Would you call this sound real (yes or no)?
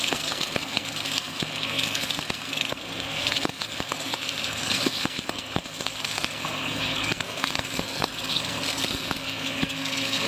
no